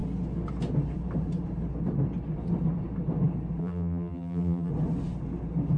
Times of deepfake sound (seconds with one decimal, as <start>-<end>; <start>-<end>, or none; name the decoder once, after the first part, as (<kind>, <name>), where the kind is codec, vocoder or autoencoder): 3.6-4.7 (vocoder, BigVGAN v2)